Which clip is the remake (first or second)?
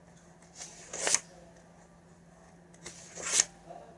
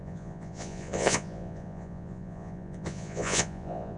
second